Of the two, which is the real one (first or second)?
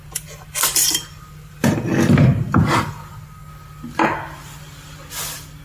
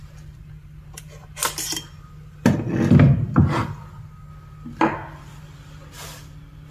second